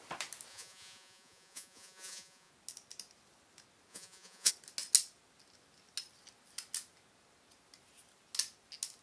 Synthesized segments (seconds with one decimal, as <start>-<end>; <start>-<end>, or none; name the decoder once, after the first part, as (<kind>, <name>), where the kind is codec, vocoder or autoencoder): 0.5-2.5 (vocoder, Vocos); 3.9-4.5